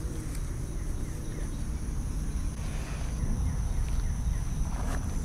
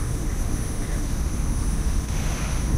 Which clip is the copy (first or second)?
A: second